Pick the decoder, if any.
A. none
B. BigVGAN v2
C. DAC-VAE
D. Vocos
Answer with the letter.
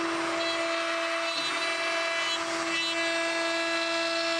A